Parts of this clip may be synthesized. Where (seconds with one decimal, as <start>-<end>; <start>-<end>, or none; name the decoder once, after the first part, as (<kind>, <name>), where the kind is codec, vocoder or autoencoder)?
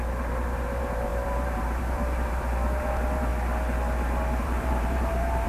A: 0.0-3.3 (vocoder, BigVGAN v2); 4.4-5.5